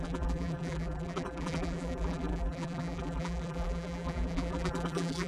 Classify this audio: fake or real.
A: fake